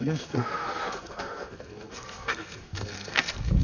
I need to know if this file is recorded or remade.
remade